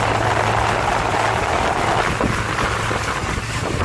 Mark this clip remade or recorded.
recorded